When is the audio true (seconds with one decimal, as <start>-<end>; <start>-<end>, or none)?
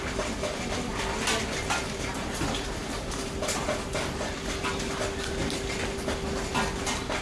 0.0-7.2